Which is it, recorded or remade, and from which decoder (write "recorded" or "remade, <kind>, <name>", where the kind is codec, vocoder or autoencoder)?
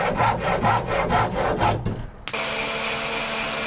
recorded